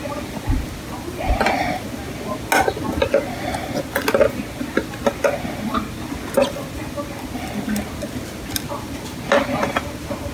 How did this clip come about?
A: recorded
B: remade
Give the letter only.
A